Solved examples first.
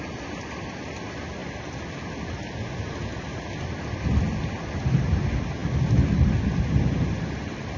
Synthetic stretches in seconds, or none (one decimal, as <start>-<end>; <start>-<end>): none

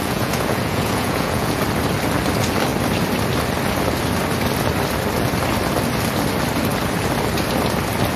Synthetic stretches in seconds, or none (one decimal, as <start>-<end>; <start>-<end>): 0.0-1.6

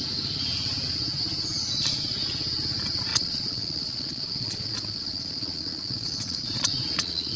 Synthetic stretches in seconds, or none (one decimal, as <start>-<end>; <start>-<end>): 3.1-7.4

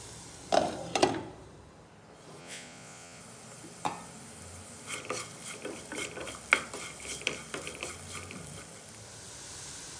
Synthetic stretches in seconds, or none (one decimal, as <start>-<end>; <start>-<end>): 2.4-3.2

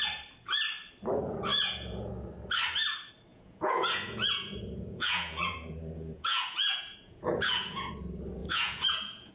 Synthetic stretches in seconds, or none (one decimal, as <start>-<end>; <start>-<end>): 1.5-2.1; 3.3-7.9; 8.4-9.3